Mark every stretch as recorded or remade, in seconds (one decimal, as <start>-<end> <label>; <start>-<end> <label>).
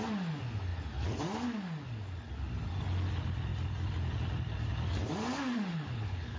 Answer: 0.0-5.7 recorded; 5.7-6.4 remade